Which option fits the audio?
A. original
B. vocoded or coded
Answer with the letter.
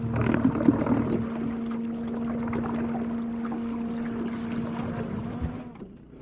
A